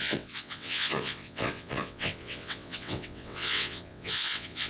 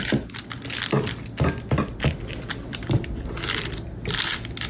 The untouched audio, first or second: second